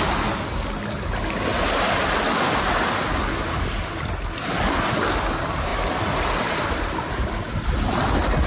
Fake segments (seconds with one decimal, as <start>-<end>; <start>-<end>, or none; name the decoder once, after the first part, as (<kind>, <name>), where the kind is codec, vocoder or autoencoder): none